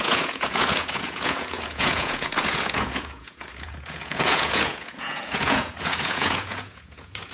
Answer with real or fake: fake